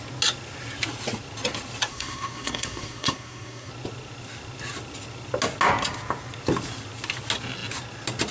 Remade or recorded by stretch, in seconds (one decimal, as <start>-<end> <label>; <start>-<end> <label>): 0.0-1.9 recorded; 1.9-3.7 remade; 3.7-8.3 recorded